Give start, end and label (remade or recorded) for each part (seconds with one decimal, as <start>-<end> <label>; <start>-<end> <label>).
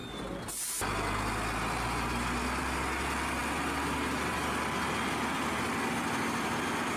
0.0-7.0 recorded